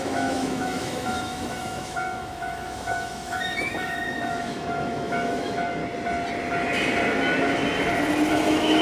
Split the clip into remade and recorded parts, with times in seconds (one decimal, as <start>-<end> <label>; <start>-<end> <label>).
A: 0.0-5.8 remade; 5.8-8.3 recorded; 8.3-8.8 remade